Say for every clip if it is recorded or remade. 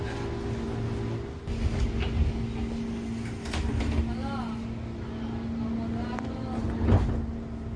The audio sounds recorded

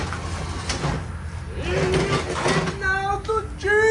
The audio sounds recorded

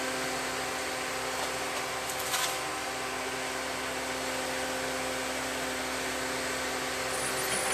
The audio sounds recorded